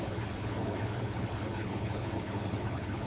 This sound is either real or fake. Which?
fake